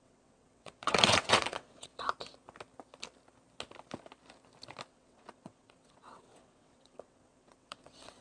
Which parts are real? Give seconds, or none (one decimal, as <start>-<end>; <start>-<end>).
1.9-4.9